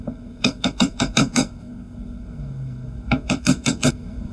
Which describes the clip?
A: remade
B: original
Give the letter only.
A